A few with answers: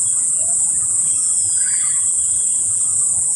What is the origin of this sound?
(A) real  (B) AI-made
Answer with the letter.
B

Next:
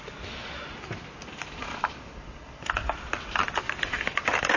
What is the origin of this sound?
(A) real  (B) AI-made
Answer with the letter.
A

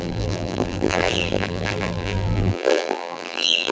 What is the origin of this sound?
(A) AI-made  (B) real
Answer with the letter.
A